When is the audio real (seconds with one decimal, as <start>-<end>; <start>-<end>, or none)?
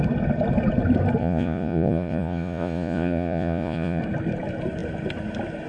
0.0-1.2; 4.0-5.7